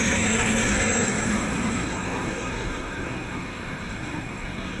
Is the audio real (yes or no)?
no